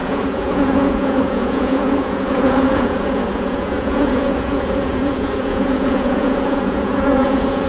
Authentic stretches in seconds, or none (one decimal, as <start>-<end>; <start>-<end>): none